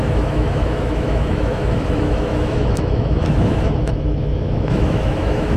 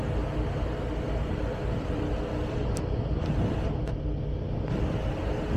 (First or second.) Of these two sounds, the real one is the second